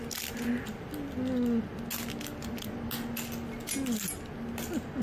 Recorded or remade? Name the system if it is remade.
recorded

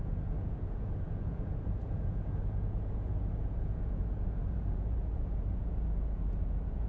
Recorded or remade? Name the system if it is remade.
remade, vocoder, Vocos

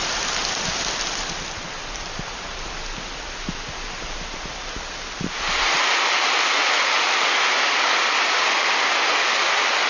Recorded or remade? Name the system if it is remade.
recorded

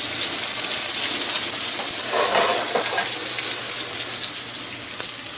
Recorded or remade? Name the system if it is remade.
recorded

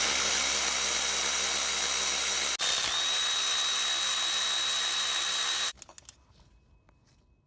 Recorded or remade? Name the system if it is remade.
recorded